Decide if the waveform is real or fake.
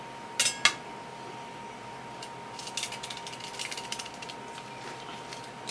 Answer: real